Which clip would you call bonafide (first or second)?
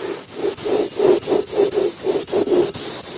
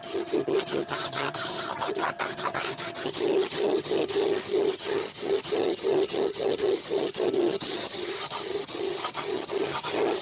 first